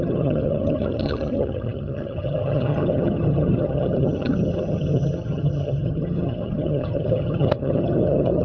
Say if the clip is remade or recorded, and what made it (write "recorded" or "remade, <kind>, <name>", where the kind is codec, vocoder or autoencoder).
remade, vocoder, HiFi-GAN